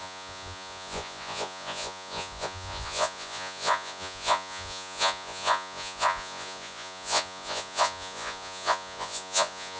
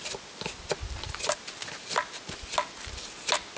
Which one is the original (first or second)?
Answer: second